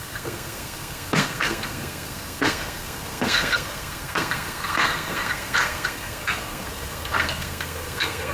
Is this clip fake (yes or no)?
yes